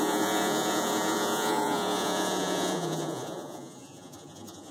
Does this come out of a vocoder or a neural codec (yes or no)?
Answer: yes